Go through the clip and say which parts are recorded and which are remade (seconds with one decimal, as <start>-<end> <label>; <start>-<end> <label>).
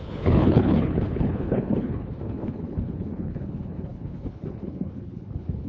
0.0-5.7 remade